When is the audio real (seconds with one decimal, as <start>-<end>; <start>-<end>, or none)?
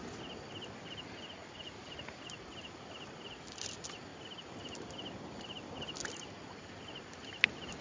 0.0-7.8